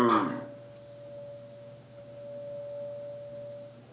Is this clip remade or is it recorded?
recorded